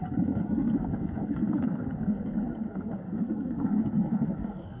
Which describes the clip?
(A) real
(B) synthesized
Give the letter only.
B